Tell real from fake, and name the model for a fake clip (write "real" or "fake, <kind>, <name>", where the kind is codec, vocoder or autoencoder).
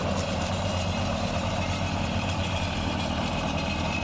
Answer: fake, vocoder, BigVGAN v2